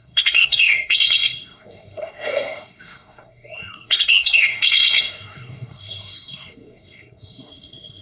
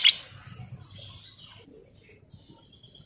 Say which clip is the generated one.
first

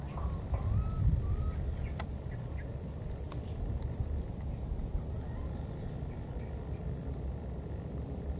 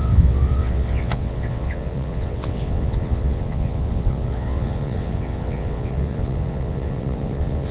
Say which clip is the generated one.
second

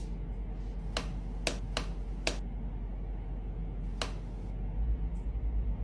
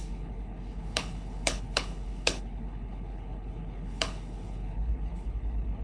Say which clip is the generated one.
second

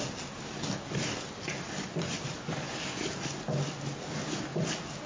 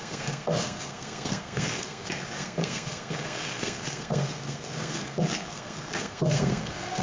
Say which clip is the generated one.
second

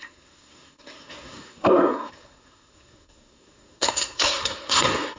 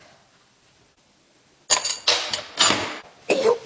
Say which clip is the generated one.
first